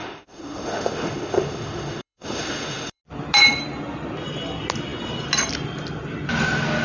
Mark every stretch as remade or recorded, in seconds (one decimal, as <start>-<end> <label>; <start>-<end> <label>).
0.0-3.0 remade; 3.0-6.8 recorded